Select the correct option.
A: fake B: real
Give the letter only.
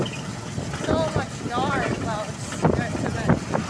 B